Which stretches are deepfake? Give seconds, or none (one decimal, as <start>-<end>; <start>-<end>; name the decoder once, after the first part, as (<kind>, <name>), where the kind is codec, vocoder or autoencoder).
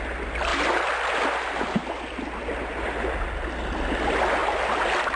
none